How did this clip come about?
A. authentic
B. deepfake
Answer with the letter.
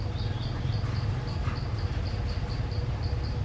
A